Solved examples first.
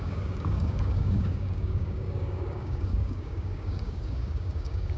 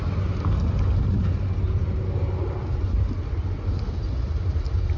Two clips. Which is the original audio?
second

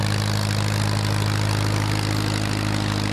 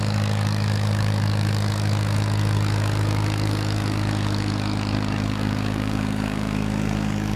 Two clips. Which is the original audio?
first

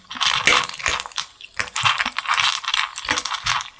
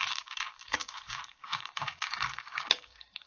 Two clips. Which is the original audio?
first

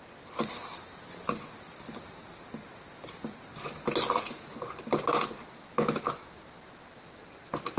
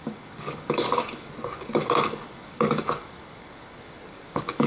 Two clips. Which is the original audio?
first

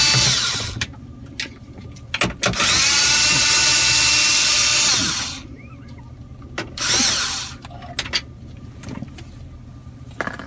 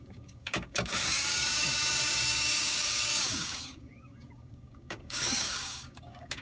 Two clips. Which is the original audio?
first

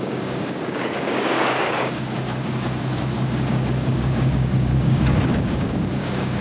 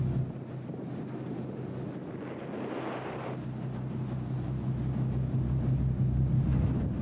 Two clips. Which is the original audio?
second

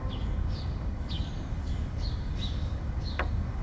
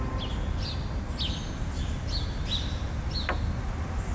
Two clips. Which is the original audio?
second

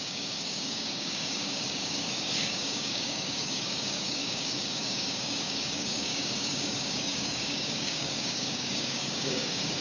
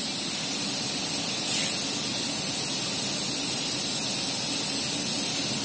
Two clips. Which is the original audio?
second